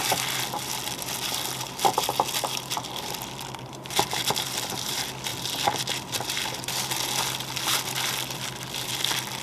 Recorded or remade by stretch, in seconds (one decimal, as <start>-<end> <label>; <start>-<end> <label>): 0.0-5.3 remade; 5.3-5.9 recorded; 5.9-9.4 remade